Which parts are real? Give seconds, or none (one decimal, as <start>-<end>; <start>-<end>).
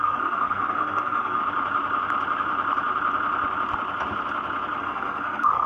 1.4-4.8